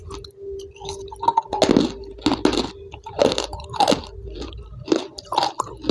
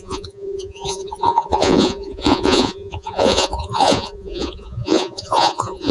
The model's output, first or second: second